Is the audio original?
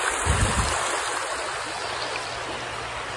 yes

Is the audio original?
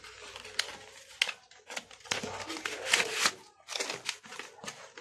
yes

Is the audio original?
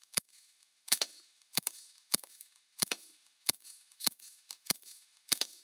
no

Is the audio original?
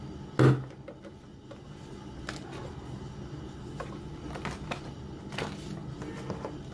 yes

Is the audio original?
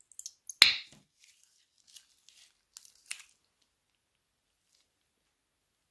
yes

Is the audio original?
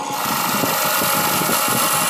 yes